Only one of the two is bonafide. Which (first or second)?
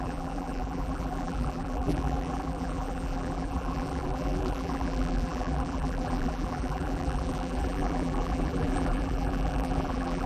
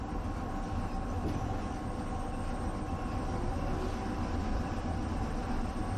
second